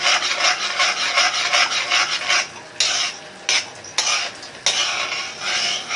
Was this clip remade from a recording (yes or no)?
no